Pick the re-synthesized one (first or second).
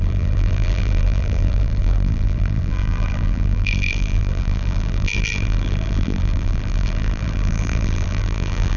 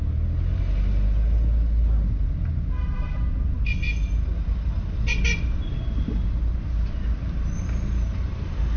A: first